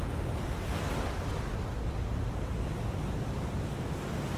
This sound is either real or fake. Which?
real